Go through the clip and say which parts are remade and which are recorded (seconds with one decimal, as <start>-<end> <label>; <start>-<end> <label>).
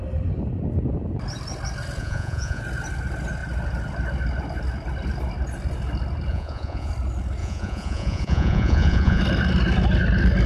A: 0.0-2.0 recorded; 2.0-2.6 remade; 2.6-6.3 recorded; 6.3-6.9 remade; 6.9-7.4 recorded; 7.4-9.2 remade; 9.2-10.5 recorded